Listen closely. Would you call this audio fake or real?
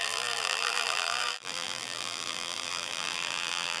fake